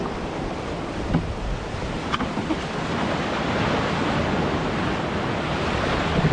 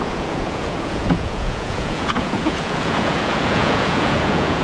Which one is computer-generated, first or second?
second